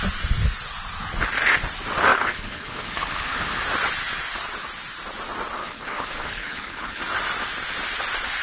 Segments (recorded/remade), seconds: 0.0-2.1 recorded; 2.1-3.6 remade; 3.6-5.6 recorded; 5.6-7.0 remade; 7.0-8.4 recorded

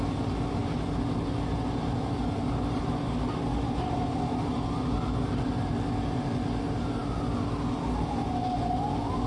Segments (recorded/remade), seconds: 0.0-9.3 recorded